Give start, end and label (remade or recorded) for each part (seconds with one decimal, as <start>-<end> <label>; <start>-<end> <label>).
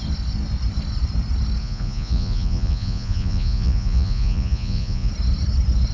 0.0-1.6 recorded; 1.6-5.1 remade; 5.1-5.9 recorded